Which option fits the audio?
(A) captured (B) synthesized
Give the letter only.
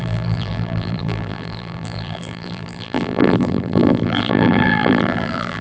B